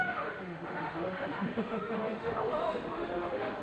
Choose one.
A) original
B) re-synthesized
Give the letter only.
B